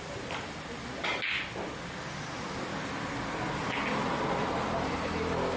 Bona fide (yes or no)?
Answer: yes